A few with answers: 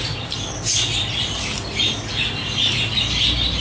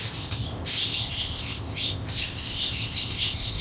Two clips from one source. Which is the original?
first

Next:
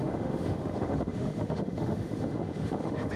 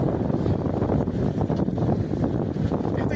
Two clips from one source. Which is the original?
second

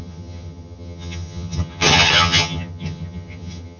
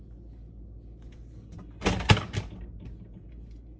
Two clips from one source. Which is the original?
second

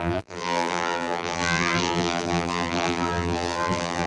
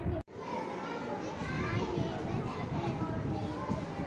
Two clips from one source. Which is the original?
second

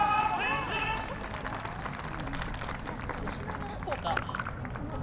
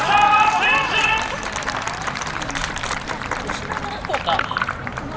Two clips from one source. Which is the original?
first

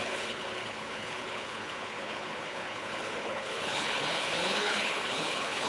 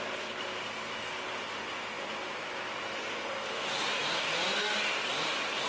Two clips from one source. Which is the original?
second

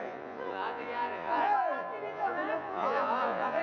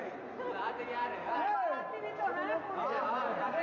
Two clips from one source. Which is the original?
second